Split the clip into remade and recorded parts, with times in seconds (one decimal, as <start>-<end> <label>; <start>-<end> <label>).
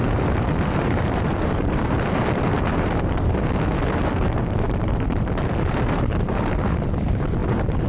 0.0-7.9 remade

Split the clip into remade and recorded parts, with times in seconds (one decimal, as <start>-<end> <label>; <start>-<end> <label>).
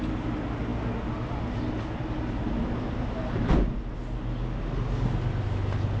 0.0-6.0 recorded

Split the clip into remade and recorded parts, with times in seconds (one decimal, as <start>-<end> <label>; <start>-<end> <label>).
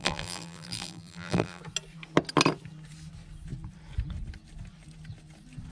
0.0-1.6 remade; 1.6-5.7 recorded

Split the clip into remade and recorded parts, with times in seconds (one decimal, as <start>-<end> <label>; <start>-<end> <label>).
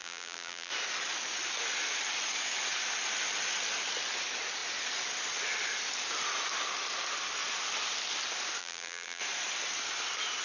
0.0-0.7 remade; 0.7-8.6 recorded; 8.6-9.2 remade; 9.2-10.4 recorded